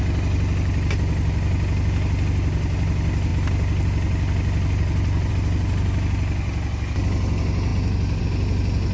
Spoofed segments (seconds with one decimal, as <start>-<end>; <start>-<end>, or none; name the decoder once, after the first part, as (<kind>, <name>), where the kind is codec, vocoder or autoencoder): none